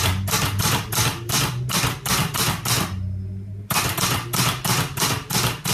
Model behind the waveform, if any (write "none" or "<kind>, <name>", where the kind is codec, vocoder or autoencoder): none